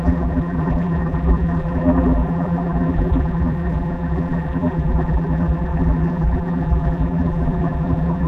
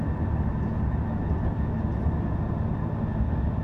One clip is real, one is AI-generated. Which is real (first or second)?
second